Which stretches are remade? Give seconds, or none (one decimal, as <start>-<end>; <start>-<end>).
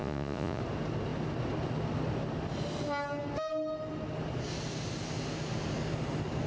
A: 0.0-0.6